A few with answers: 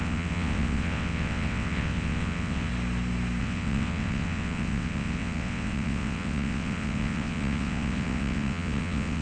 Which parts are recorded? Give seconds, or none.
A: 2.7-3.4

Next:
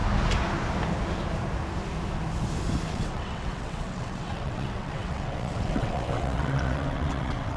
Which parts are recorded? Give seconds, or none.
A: 0.0-2.9

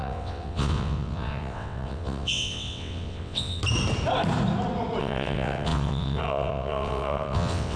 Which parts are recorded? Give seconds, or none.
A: 3.6-5.0

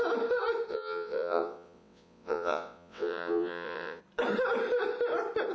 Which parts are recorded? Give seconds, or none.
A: 0.0-0.7; 4.0-5.5

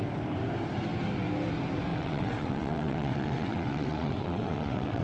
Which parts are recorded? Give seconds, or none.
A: 0.0-1.9

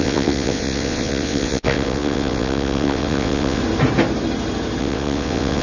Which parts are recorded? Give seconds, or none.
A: 3.6-4.8